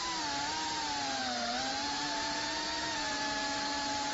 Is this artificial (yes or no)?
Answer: no